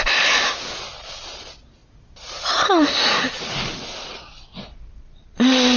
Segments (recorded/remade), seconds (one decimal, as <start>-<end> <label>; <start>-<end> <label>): 0.0-5.8 recorded